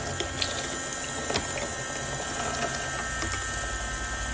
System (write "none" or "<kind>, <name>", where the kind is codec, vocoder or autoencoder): none